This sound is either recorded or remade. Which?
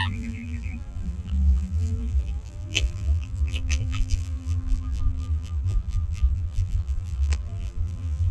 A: remade